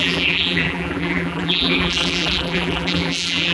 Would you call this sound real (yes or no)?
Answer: no